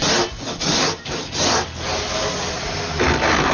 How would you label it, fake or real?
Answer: real